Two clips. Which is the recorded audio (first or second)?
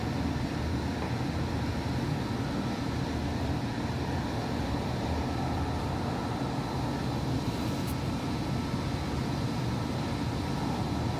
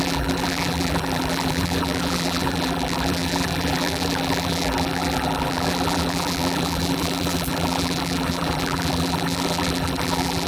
first